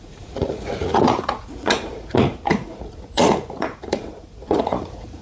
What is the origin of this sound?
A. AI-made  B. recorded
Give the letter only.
A